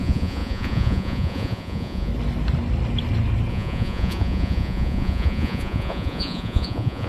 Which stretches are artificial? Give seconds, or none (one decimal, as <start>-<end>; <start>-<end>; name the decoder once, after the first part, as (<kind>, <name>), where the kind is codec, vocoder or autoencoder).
0.0-2.1 (vocoder, Vocos); 3.5-7.1